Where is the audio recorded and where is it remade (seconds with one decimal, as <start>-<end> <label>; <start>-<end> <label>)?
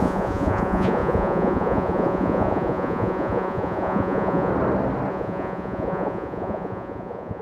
0.0-4.5 remade; 4.5-5.1 recorded; 5.1-7.4 remade